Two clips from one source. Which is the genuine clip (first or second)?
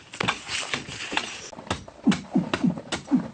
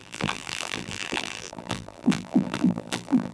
first